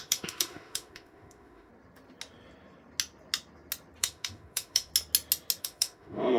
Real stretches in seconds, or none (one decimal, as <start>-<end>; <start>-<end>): 1.7-4.0; 4.9-5.6